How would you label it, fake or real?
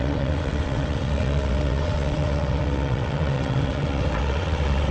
fake